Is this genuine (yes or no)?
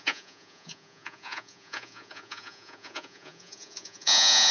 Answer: no